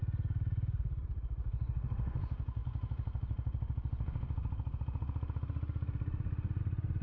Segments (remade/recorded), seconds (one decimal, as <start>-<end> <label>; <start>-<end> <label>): 0.0-7.0 recorded